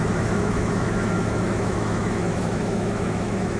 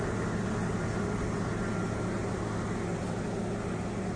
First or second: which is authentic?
second